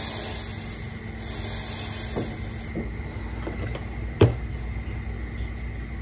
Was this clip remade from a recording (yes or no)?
no